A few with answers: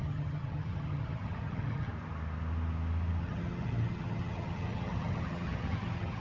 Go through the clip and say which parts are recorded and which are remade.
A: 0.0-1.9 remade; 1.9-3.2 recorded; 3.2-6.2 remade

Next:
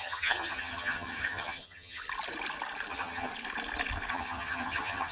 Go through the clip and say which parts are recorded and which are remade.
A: 0.0-2.0 remade; 2.0-2.9 recorded; 2.9-3.3 remade; 3.3-4.1 recorded; 4.1-5.1 remade

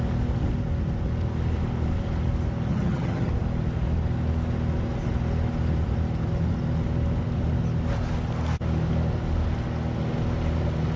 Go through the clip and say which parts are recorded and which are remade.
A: 0.0-2.7 recorded; 2.7-3.3 remade; 3.3-11.0 recorded